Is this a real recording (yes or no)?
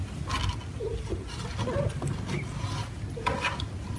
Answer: yes